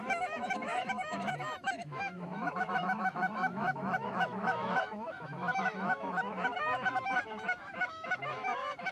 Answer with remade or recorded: remade